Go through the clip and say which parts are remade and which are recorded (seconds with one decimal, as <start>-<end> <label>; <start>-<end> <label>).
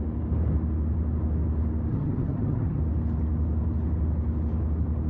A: 0.0-1.9 recorded; 1.9-2.8 remade; 2.8-5.1 recorded